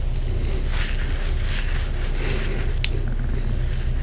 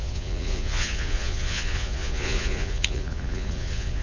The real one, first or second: first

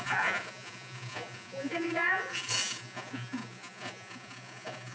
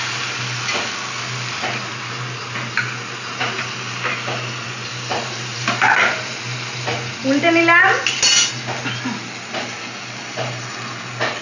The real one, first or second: second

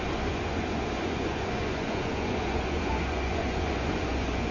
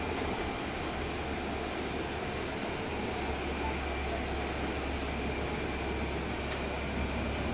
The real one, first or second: second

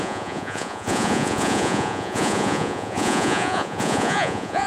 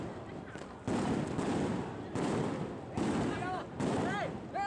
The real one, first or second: second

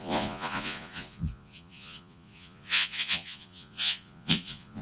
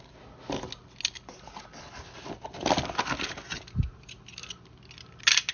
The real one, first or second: second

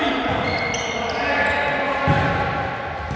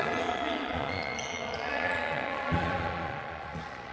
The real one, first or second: first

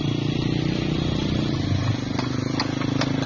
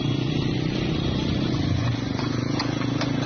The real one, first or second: first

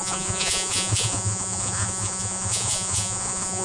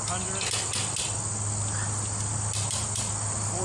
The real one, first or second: second